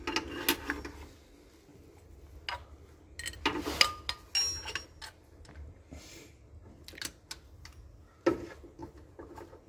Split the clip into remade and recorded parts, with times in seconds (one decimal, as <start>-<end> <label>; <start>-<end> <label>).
0.0-9.7 recorded